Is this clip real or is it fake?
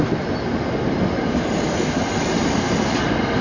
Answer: real